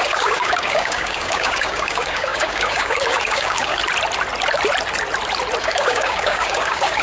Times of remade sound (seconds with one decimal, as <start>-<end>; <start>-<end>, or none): 0.0-3.8; 5.6-7.0